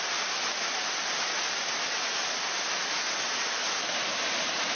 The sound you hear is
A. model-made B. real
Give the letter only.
B